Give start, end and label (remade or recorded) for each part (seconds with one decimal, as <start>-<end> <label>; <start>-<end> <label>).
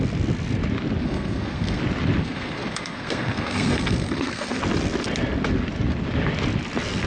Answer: 0.0-1.0 recorded; 1.0-1.8 remade; 1.8-2.2 recorded; 2.2-4.6 remade; 4.6-7.1 recorded